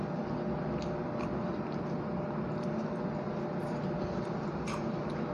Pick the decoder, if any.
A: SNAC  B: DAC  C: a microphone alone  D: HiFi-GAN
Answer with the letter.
C